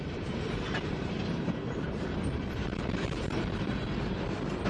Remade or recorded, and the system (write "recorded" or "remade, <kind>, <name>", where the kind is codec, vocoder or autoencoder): remade, vocoder, BigVGAN v2